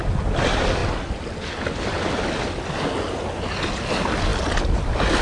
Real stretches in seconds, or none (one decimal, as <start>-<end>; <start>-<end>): 0.8-3.7; 4.3-5.2